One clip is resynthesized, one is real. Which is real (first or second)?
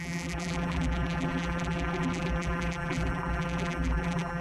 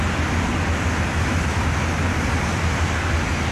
second